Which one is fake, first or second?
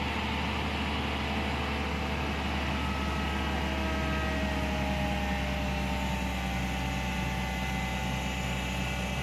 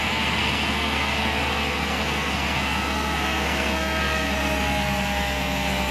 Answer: second